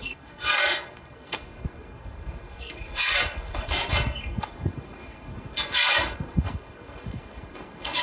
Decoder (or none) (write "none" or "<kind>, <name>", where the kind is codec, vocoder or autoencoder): codec, SNAC